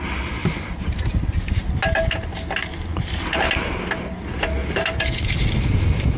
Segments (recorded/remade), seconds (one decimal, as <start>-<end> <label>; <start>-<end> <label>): 0.0-0.4 recorded; 0.4-1.5 remade; 1.5-4.6 recorded; 4.6-6.2 remade